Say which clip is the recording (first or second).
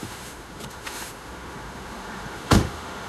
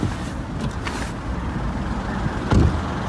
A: second